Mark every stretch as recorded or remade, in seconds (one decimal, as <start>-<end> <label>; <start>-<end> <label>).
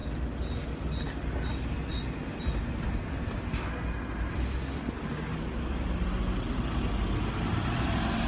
0.0-8.3 recorded